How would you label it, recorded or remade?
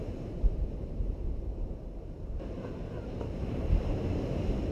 remade